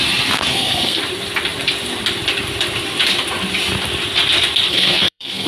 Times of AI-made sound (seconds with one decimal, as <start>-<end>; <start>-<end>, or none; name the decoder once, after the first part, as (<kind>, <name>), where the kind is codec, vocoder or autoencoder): 0.5-1.0 (codec, SNAC); 4.7-5.5